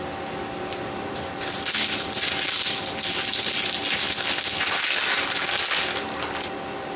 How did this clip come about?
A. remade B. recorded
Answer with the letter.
B